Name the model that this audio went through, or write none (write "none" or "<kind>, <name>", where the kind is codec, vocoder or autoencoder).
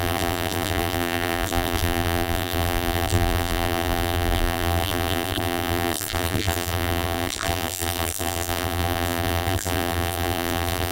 vocoder, BigVGAN v2